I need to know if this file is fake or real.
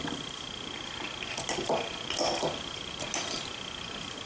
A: real